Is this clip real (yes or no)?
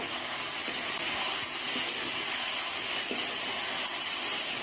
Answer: yes